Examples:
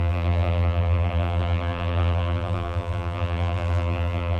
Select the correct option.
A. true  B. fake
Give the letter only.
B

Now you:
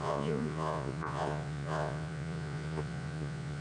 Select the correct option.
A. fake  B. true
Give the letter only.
A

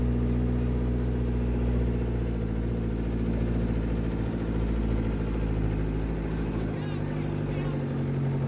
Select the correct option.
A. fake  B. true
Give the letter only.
B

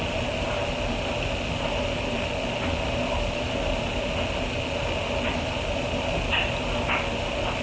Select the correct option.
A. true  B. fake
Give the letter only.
A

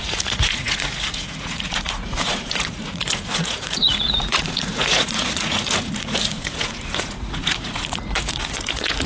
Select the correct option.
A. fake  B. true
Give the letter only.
A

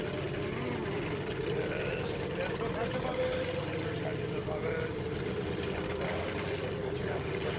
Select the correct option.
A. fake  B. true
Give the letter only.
B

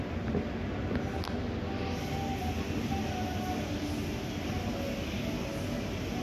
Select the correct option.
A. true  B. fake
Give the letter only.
A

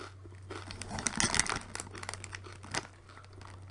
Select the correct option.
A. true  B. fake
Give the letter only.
A